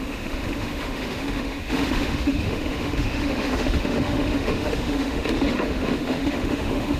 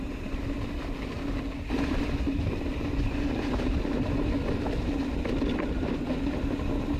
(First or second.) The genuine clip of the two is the second